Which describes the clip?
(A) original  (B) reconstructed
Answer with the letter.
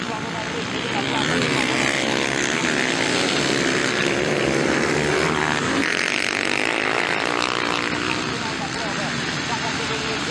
A